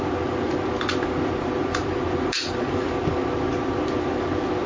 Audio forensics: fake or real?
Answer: real